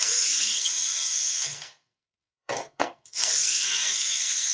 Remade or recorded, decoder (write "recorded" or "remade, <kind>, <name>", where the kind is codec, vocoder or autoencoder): remade, codec, SNAC